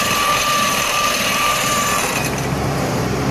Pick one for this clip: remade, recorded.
remade